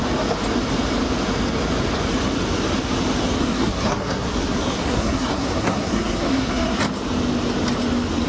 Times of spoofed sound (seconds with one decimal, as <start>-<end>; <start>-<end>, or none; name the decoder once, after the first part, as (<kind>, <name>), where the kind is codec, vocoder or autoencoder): 3.4-6.8 (codec, SNAC)